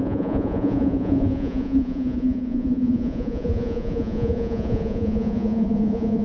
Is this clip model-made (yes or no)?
yes